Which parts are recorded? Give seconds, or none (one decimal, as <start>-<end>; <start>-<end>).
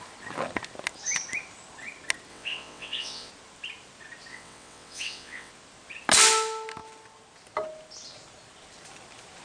0.0-2.3; 3.3-4.3; 5.5-9.4